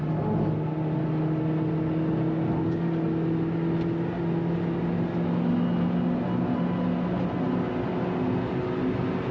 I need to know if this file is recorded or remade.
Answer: recorded